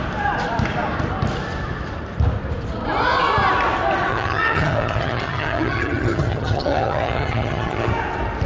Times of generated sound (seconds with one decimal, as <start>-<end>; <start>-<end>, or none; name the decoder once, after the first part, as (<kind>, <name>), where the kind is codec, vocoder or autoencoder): 4.1-7.9 (vocoder, HiFi-GAN)